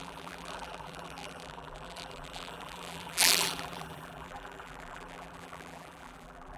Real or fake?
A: fake